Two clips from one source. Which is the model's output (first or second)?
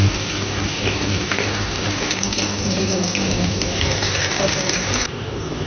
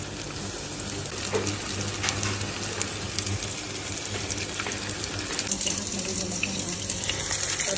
first